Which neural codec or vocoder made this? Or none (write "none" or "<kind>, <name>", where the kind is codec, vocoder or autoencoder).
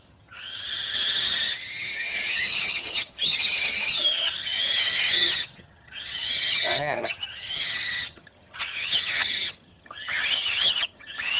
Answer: vocoder, HiFi-GAN